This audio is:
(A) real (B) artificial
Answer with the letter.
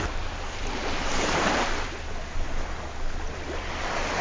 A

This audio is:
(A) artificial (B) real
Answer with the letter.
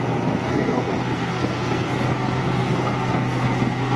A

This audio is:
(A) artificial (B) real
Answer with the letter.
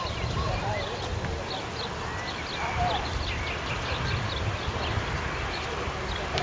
B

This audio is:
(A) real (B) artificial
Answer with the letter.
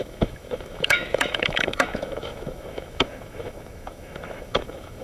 B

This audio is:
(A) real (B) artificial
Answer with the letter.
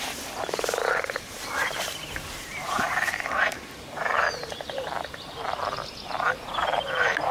B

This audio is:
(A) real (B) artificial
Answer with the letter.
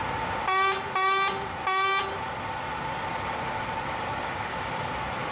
A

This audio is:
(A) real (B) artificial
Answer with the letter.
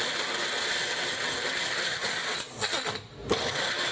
A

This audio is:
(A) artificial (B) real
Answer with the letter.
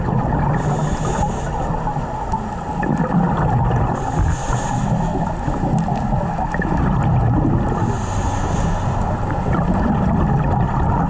B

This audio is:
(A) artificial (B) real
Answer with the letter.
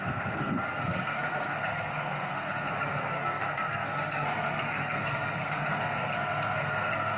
A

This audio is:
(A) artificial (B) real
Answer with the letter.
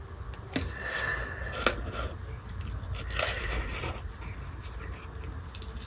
B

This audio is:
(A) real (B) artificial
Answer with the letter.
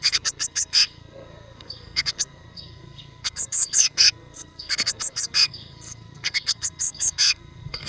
B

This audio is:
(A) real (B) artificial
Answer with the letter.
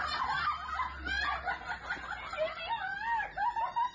A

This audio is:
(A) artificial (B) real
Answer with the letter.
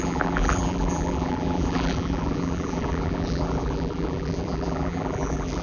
A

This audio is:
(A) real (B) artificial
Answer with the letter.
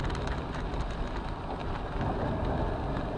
A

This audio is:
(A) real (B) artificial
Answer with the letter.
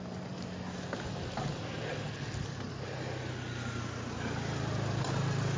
A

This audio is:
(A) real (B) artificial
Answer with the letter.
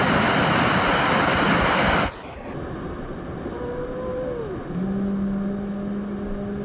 A